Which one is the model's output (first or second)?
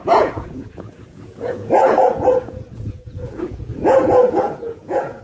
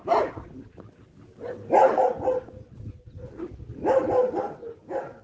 first